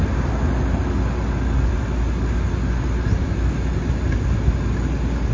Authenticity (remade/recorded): recorded